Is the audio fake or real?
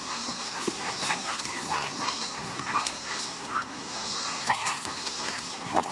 fake